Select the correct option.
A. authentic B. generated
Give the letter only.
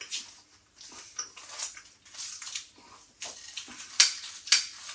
A